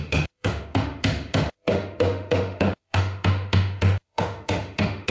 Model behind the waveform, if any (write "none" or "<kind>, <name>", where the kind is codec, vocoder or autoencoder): autoencoder, DAC-VAE